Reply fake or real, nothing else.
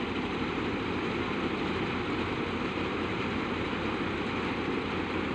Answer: fake